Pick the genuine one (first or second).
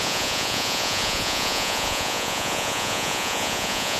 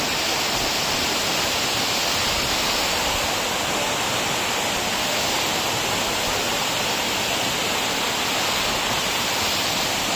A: second